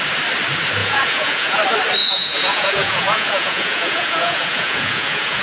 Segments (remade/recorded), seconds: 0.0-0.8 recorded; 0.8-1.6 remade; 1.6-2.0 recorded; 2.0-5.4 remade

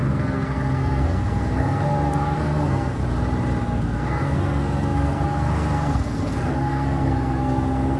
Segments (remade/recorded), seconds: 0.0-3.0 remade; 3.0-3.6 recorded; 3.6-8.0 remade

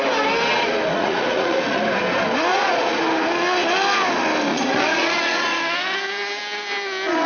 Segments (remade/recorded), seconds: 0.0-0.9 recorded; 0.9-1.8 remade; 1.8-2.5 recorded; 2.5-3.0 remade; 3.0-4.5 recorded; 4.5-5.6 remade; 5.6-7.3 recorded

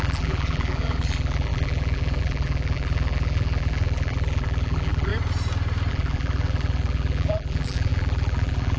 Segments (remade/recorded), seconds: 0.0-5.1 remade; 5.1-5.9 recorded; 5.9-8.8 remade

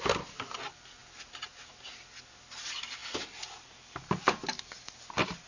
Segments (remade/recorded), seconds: 0.0-5.5 recorded